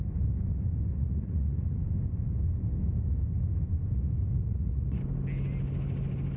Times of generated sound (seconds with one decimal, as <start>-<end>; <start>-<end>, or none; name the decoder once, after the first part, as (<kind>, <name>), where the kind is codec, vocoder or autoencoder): 0.9-1.8 (vocoder, Vocos); 4.3-5.0